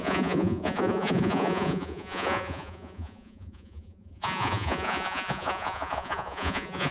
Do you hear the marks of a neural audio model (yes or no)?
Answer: yes